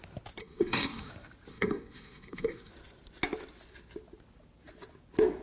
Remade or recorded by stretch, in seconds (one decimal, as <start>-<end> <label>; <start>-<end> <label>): 0.0-0.4 recorded; 0.4-1.1 remade; 1.1-1.5 recorded; 1.5-2.7 remade; 2.7-5.4 recorded